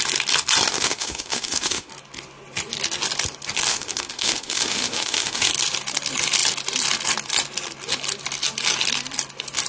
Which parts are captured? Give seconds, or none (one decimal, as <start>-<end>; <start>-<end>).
0.0-0.7; 1.9-3.7; 5.5-9.7